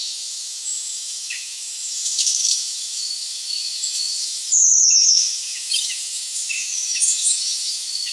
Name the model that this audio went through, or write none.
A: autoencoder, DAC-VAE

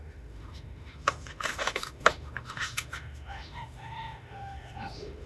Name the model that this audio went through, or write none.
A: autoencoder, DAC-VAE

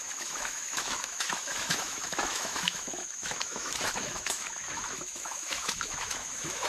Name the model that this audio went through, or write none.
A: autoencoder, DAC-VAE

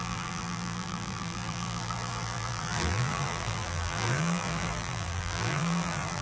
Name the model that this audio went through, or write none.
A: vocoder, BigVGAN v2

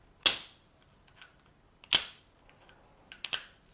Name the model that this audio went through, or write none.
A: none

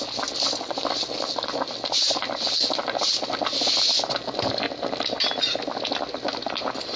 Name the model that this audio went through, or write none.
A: none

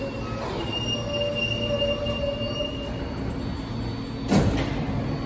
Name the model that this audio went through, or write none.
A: none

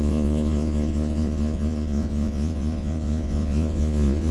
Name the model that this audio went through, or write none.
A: vocoder, Vocos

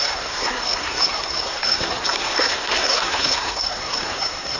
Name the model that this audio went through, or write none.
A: codec, SNAC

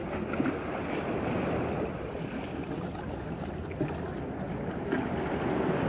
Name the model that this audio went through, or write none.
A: none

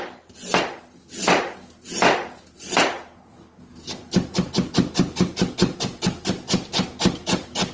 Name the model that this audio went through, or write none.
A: none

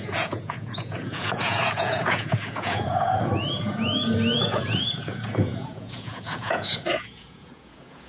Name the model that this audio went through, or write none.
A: vocoder, Vocos